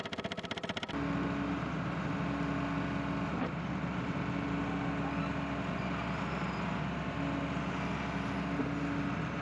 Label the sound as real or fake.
real